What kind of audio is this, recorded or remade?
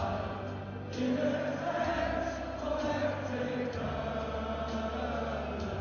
recorded